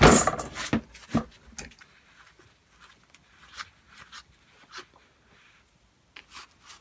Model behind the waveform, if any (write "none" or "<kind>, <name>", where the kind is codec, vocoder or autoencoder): none